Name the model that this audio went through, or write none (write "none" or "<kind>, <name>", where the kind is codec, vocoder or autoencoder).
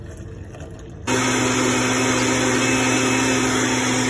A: none